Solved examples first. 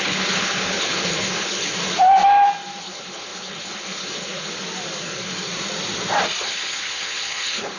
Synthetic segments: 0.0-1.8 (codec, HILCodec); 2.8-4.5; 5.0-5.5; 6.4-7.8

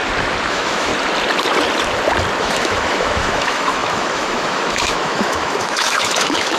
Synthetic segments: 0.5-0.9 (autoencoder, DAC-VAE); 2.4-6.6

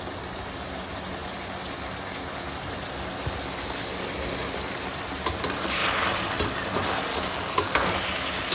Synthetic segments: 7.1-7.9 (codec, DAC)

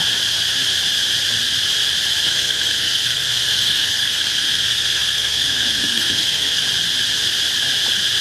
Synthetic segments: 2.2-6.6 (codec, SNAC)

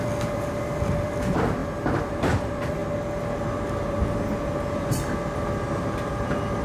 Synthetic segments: 0.0-2.8 (vocoder, BigVGAN v2); 4.7-6.6

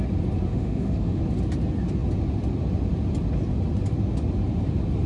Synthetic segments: 0.5-1.2 (autoencoder, DAC-VAE)